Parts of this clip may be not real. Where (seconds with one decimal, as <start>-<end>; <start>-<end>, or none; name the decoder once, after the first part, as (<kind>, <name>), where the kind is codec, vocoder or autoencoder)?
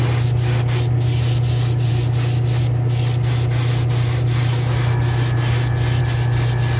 none